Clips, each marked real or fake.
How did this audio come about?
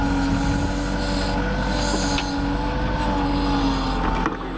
real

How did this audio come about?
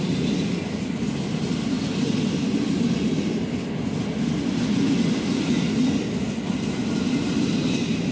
real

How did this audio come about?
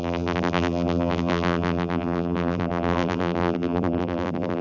fake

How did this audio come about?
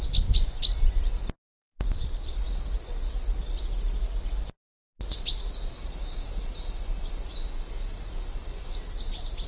real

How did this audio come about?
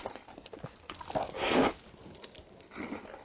fake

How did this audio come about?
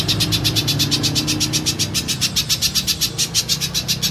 real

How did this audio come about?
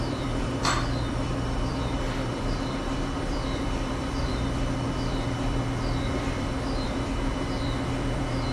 fake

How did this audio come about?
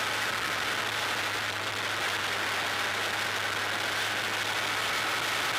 real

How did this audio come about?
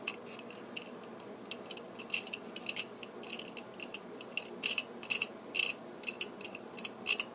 real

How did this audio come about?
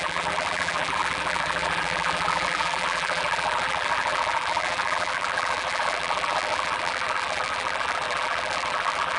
fake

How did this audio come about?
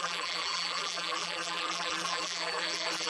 fake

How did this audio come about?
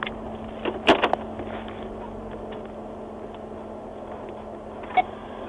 real